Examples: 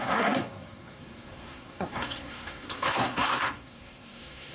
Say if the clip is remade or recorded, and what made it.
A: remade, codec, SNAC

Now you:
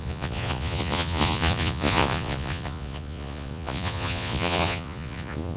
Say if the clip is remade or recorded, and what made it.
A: remade, vocoder, Vocos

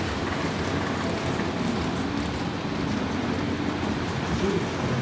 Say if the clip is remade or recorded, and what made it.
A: recorded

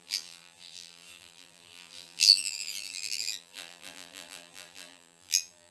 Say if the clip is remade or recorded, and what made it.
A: remade, vocoder, BigVGAN v2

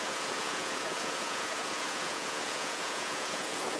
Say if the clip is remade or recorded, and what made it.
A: remade, vocoder, Vocos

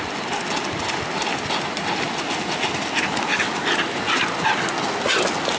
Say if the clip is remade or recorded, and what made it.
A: recorded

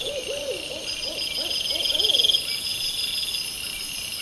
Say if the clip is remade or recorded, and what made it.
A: recorded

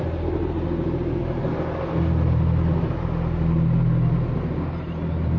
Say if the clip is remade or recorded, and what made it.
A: recorded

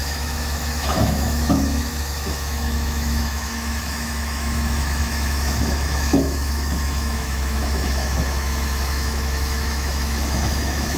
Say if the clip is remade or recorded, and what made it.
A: remade, autoencoder, DAC-VAE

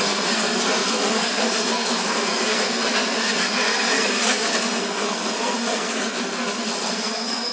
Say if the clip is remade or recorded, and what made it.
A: remade, codec, SNAC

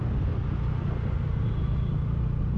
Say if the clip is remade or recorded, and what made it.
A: recorded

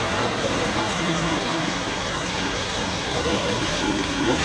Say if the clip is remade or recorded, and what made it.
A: remade, codec, SNAC